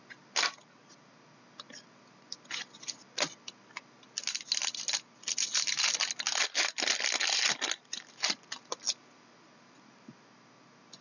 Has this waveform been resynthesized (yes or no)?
no